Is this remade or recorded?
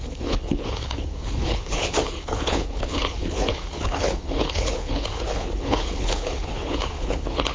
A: remade